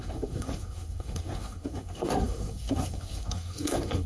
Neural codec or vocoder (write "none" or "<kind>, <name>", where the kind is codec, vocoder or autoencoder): codec, SNAC